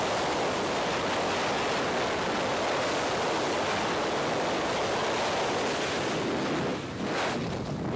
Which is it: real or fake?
real